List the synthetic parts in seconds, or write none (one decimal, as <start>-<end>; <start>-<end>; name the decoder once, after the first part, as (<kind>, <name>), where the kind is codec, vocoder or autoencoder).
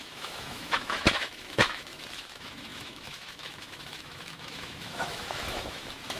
0.0-6.2 (autoencoder, DAC-VAE)